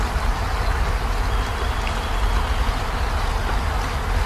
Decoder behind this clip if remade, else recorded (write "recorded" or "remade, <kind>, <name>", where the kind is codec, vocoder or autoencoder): recorded